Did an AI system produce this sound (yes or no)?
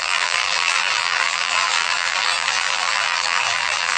yes